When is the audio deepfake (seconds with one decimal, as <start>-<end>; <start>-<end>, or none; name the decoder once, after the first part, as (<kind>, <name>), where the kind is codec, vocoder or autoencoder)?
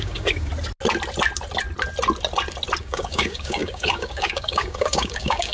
0.0-0.5 (codec, DAC); 2.8-5.5